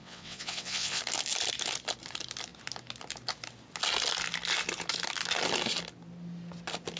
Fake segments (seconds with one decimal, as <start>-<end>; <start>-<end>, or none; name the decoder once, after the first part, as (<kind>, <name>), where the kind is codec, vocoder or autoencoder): 0.0-1.0 (vocoder, WaveNeXt)

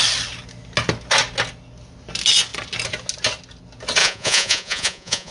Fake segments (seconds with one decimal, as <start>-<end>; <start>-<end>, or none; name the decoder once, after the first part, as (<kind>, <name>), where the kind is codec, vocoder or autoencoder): 4.0-5.3 (vocoder, Vocos)

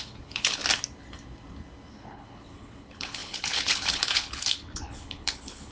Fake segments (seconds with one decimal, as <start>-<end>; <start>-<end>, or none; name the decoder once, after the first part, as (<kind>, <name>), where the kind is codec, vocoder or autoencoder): 0.0-0.6 (codec, HILCodec); 1.9-5.7

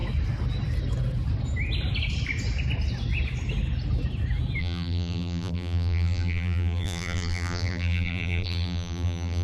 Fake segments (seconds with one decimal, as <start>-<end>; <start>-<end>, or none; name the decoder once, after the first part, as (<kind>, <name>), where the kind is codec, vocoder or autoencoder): 4.6-9.4 (vocoder, BigVGAN v2)